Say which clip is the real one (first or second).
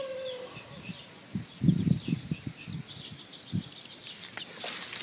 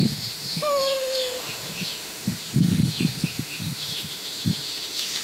first